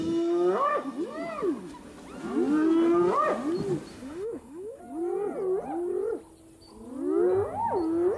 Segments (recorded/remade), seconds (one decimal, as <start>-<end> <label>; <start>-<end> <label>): 0.0-3.9 recorded; 3.9-4.8 remade; 4.8-8.2 recorded